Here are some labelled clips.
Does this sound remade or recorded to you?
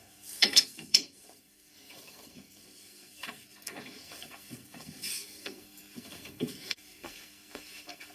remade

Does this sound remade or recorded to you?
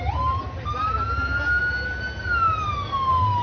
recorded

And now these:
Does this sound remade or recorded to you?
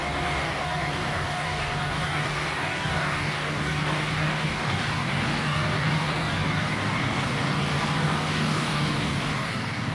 remade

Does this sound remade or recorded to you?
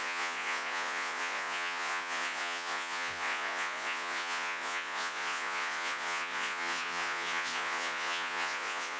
remade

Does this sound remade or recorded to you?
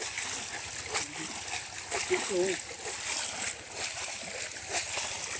recorded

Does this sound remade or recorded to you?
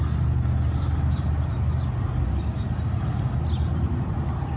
recorded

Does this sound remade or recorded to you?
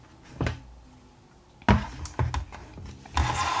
recorded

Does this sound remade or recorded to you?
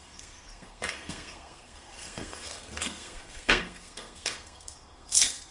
remade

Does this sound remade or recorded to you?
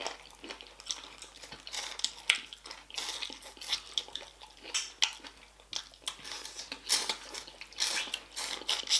recorded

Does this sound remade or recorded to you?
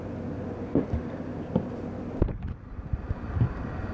recorded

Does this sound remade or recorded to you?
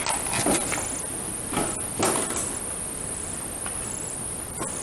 recorded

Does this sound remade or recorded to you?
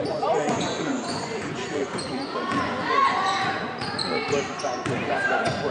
remade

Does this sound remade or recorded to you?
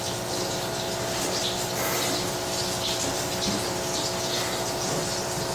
recorded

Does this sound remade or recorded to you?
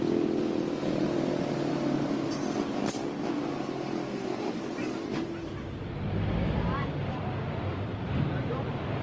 recorded